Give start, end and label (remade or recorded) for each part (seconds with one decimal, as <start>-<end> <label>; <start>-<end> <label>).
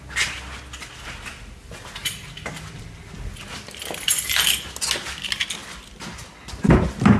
0.0-7.2 recorded